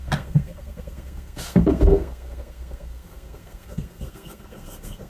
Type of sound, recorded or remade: remade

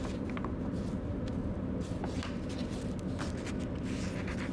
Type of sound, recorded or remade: recorded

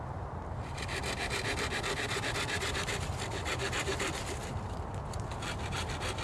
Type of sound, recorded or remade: recorded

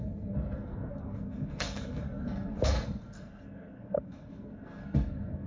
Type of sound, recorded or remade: remade